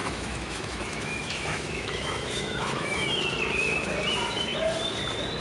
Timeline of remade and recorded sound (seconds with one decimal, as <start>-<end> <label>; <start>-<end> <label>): 0.0-3.2 remade; 3.2-5.4 recorded